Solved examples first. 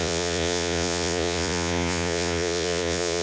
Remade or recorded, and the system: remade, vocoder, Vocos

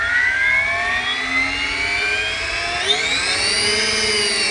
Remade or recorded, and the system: recorded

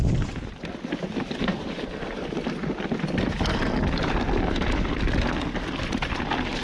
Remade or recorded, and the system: recorded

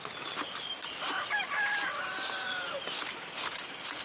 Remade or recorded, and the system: recorded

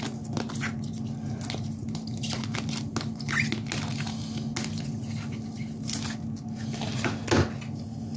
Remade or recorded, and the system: recorded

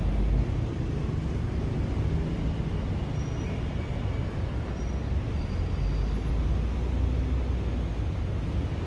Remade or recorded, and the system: recorded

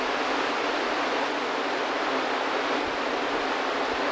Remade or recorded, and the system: recorded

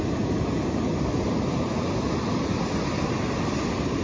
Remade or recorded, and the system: recorded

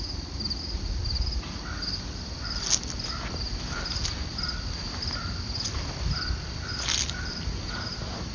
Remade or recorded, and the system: recorded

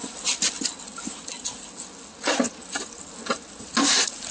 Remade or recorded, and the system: recorded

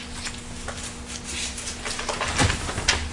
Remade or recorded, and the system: recorded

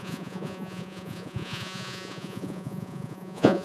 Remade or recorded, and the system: remade, vocoder, Vocos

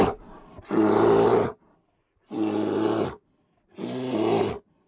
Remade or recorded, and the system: recorded